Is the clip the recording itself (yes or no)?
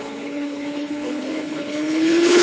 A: no